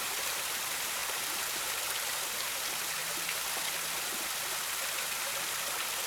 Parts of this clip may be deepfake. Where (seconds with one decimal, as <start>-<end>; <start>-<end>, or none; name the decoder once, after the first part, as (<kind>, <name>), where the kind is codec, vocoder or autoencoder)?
none